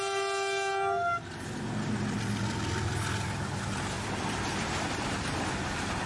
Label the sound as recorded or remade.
recorded